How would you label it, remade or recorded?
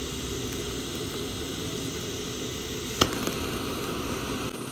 recorded